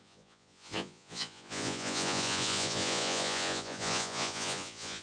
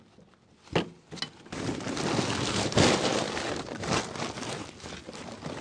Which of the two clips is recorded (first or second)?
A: second